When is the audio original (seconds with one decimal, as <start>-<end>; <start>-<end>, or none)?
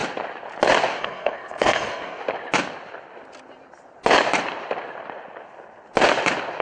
0.0-1.0; 2.2-6.6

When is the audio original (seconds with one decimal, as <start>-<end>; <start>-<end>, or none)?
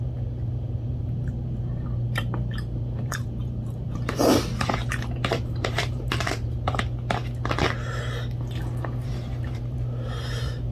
7.2-8.8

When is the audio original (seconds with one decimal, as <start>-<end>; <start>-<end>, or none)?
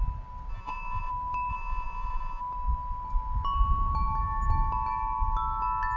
0.0-0.5; 1.1-1.5; 2.4-6.0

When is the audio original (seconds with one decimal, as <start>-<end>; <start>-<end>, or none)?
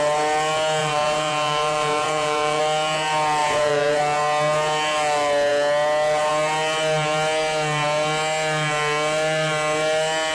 0.0-0.8; 2.6-3.4; 4.0-10.3